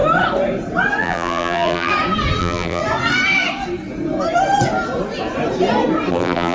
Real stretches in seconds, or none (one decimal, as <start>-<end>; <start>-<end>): 0.0-1.0; 1.9-2.4; 2.8-6.1